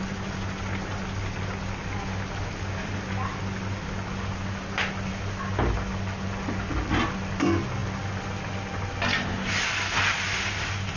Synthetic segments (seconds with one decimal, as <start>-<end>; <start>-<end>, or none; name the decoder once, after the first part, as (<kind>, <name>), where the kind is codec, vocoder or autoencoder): none